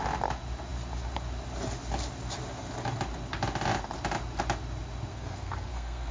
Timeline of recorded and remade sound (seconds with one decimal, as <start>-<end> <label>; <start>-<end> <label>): 0.0-5.1 recorded; 5.1-6.1 remade